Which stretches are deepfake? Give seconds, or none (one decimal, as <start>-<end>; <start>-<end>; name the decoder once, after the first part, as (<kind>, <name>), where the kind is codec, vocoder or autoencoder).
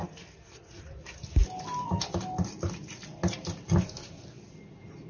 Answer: none